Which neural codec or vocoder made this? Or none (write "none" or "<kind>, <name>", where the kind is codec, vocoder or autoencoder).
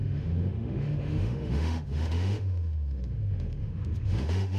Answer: autoencoder, DAC-VAE